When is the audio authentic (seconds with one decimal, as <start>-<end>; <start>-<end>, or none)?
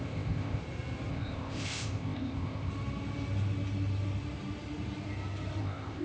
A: 0.6-1.1; 2.7-5.6